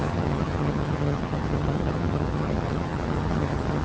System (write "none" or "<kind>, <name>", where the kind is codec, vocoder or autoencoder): vocoder, HiFi-GAN